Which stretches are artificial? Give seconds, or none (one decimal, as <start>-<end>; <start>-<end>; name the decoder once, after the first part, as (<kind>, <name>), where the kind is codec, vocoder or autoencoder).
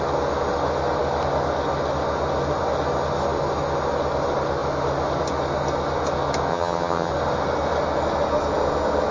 6.5-7.1 (vocoder, HiFi-GAN)